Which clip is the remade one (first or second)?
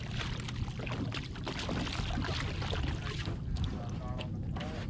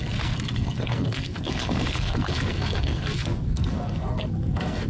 second